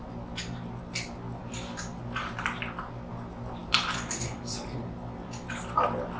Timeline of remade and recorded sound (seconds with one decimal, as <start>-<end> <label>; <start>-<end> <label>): 0.0-1.4 recorded; 1.4-2.0 remade; 2.0-3.6 recorded; 3.6-5.5 remade; 5.5-6.2 recorded

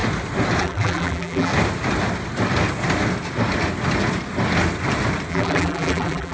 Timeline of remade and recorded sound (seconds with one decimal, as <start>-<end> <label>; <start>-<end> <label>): 0.0-0.6 recorded; 0.6-1.5 remade; 1.5-5.3 recorded; 5.3-6.3 remade